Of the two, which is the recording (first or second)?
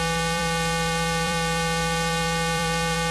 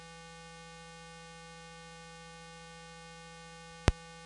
second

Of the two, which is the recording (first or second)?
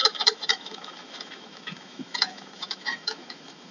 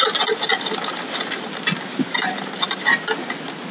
second